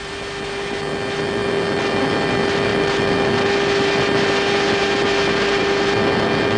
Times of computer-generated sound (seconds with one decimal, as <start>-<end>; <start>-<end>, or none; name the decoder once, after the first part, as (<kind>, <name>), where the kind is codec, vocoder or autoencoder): none